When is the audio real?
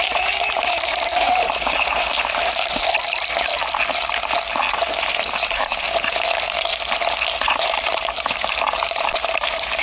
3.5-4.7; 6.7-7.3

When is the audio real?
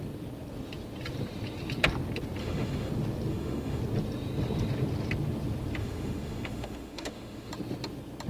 0.0-2.4; 2.9-3.3; 3.8-5.8; 7.5-8.3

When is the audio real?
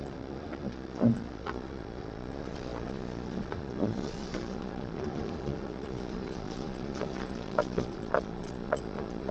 none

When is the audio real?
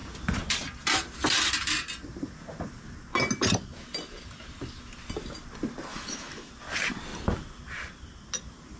0.0-5.9; 6.5-8.8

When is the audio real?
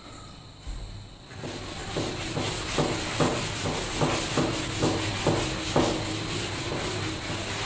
0.0-7.6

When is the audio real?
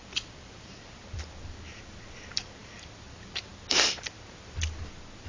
0.0-5.3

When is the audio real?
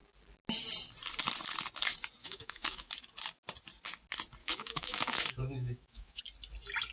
0.0-2.2; 2.9-4.4; 6.2-6.9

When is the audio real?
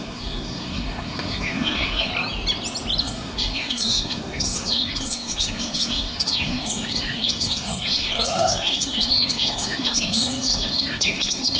2.1-3.0